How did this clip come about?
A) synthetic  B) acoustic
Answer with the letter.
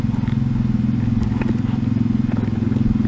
B